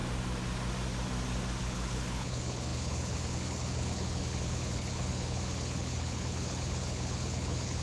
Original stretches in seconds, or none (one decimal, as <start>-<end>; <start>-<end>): 0.0-1.6